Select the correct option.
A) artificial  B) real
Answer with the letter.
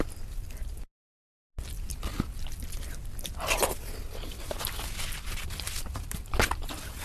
B